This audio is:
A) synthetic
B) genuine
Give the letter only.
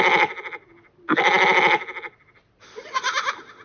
B